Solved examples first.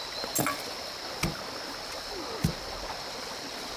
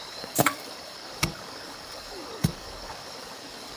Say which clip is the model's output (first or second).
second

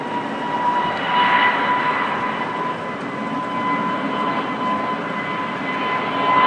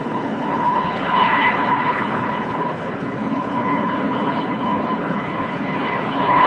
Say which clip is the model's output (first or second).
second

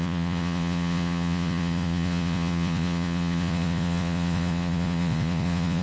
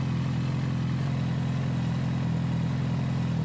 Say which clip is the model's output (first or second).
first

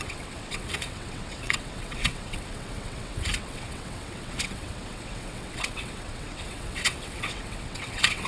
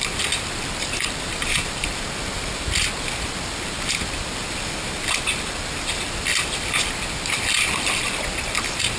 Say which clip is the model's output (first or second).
first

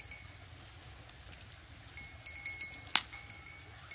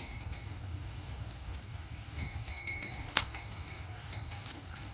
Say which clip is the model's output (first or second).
second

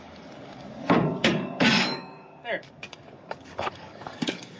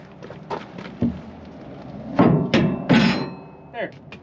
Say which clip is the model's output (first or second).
first